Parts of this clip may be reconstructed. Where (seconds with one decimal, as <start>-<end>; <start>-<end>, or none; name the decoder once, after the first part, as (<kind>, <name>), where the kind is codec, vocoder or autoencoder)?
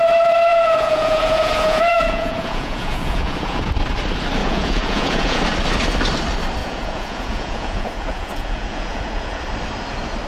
0.5-3.7 (vocoder, Vocos); 4.4-5.4; 6.6-9.4